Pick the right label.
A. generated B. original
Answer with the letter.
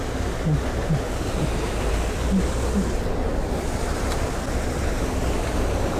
B